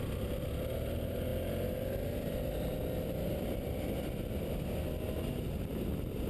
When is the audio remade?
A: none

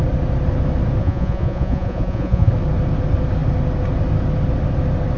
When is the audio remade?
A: 1.0-2.5 (vocoder, Vocos)

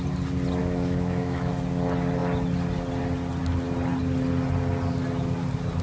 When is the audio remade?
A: 0.6-1.5 (autoencoder, DAC-VAE)

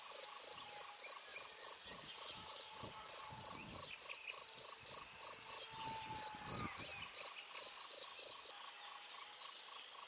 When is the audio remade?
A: 1.3-3.7 (vocoder, Vocos)

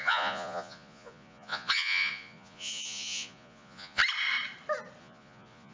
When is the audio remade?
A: 0.0-4.0 (vocoder, Vocos); 5.0-5.7

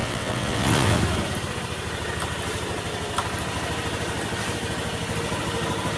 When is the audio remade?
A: 0.0-1.0 (vocoder, WaveNeXt)